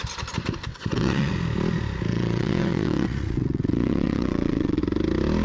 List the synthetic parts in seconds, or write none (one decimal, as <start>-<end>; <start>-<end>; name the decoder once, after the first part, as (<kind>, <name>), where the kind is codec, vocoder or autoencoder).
0.7-1.3 (vocoder, WaveNeXt); 2.1-4.8